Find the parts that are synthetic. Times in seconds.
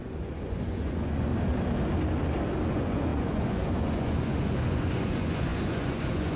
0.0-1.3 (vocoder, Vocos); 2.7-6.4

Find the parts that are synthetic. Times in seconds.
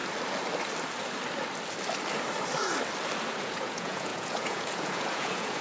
3.4-5.6 (vocoder, Vocos)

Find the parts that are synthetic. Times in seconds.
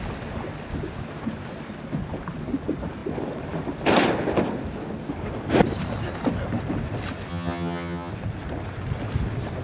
7.3-8.1 (vocoder, HiFi-GAN)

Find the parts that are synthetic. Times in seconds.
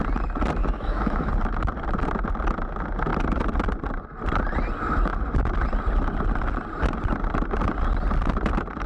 0.6-1.3 (autoencoder, DAC-VAE)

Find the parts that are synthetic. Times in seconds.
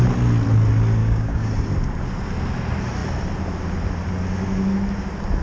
1.0-1.5 (codec, DAC)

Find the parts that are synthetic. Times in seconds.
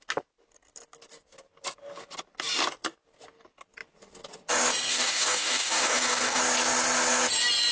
4.9-6.4 (codec, DAC)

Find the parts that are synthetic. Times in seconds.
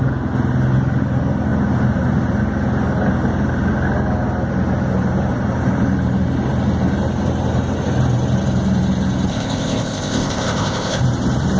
9.3-11.0 (codec, ZipCodec)